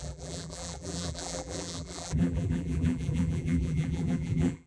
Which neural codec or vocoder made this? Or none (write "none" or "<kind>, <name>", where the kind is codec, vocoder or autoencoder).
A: vocoder, BigVGAN v2